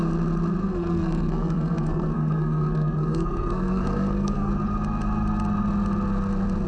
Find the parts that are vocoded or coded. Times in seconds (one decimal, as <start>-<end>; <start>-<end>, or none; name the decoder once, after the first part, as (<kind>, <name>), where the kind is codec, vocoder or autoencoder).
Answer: 0.6-4.5 (codec, SNAC)